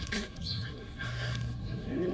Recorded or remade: remade